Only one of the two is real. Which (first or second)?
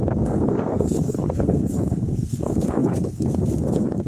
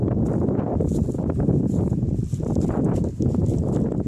second